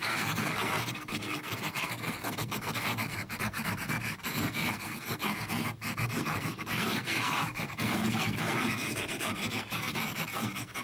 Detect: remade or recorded remade